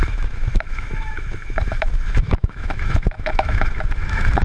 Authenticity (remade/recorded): remade